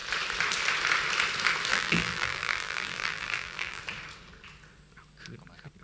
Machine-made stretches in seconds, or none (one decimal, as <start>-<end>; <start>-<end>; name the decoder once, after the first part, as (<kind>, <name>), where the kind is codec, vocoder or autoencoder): 1.7-3.8 (vocoder, BigVGAN v2)